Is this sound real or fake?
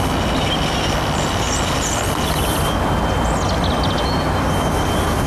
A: real